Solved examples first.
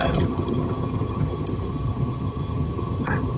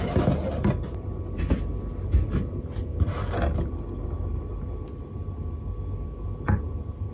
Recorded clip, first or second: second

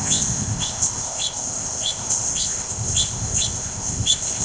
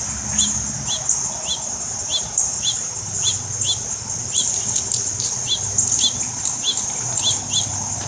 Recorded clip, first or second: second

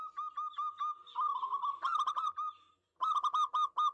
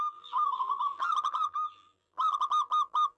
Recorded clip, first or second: first